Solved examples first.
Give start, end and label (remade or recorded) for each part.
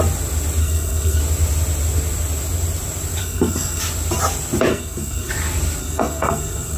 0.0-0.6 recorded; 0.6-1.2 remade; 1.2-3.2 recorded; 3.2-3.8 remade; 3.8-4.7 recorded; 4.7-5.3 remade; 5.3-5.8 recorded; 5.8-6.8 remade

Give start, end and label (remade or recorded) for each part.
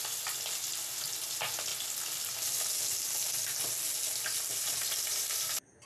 0.0-5.9 recorded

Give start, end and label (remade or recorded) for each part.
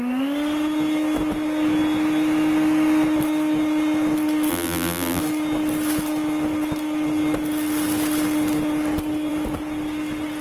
0.0-4.5 recorded; 4.5-5.2 remade; 5.2-10.4 recorded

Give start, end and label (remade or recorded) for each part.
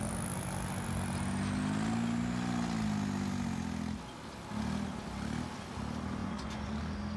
0.0-6.2 recorded; 6.2-6.8 remade; 6.8-7.2 recorded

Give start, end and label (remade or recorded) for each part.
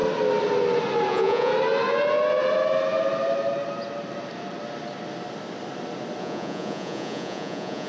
0.0-1.1 recorded; 1.1-1.5 remade; 1.5-6.2 recorded; 6.2-7.9 remade